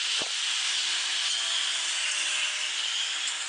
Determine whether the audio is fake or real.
real